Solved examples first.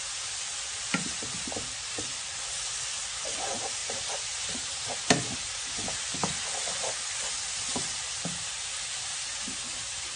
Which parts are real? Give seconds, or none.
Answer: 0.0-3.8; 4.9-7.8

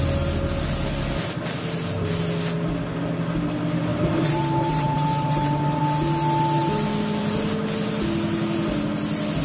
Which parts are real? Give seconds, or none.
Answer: 0.0-3.9; 5.8-9.4

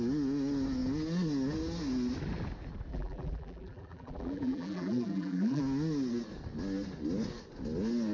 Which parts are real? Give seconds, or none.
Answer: 0.0-2.9; 5.6-8.1

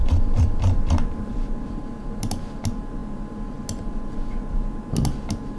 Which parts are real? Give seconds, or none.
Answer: 1.3-5.6

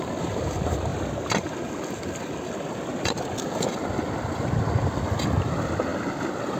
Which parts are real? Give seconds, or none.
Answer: 0.0-5.9

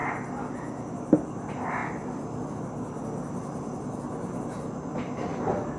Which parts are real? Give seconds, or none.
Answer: 0.0-5.8

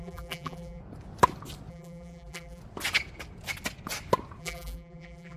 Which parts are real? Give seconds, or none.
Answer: 0.8-1.7; 2.6-4.4

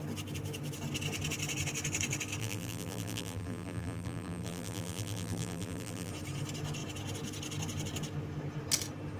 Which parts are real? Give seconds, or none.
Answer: 0.0-2.4; 6.1-9.2